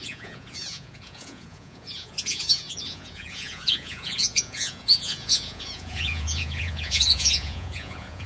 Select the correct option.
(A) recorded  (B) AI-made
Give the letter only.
B